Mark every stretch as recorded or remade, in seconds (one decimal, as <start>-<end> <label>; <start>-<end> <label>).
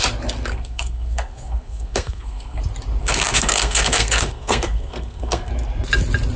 0.0-0.5 recorded; 0.5-2.6 remade; 2.6-3.0 recorded; 3.0-5.5 remade; 5.5-6.4 recorded